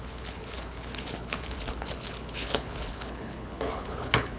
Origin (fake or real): fake